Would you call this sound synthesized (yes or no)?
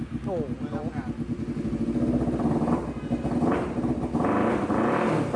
no